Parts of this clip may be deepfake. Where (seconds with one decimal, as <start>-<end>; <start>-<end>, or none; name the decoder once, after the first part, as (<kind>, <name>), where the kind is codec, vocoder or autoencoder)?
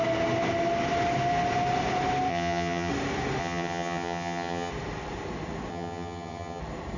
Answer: 2.3-2.9 (vocoder, HiFi-GAN); 3.4-4.7; 5.7-6.6